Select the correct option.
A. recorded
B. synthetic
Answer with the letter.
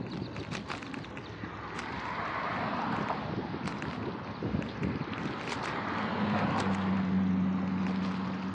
A